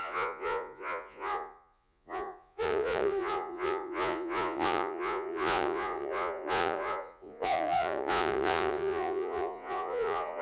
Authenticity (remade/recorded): remade